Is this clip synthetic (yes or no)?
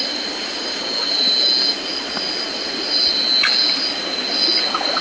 no